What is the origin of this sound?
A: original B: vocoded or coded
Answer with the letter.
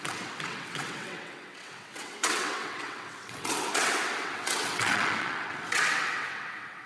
B